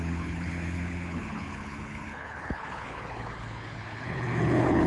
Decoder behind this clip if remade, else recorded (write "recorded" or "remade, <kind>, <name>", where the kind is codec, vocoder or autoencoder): remade, codec, HILCodec